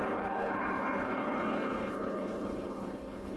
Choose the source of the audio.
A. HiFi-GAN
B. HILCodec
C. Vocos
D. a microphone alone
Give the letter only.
B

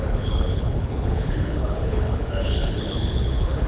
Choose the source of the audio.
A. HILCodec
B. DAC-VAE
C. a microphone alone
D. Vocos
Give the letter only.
A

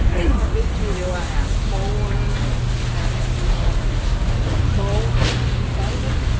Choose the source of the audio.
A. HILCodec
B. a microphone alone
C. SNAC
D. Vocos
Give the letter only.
B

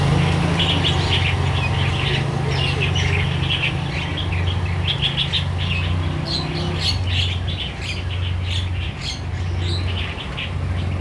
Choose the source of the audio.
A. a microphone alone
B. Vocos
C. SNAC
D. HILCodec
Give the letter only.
A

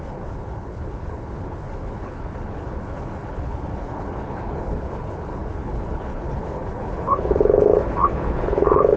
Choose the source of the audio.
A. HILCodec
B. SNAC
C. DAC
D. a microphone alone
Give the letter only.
A